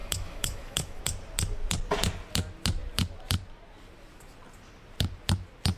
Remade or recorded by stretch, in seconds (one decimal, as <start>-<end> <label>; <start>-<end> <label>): 0.0-1.0 remade; 1.0-5.8 recorded